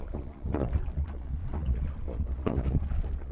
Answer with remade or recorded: remade